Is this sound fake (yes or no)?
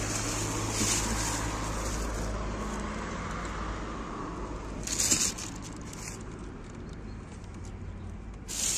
no